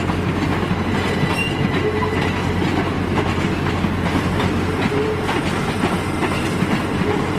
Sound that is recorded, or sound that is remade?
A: recorded